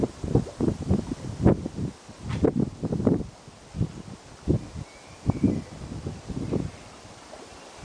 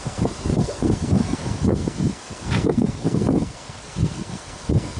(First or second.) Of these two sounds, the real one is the first